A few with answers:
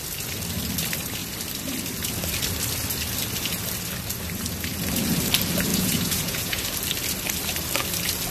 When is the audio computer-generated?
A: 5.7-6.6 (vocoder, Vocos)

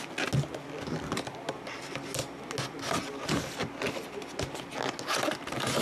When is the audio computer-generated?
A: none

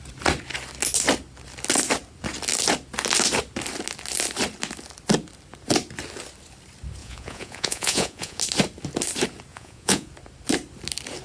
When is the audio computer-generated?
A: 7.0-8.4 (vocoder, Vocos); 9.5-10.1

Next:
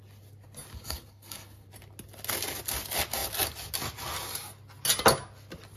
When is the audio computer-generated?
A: 0.7-1.7 (codec, SNAC)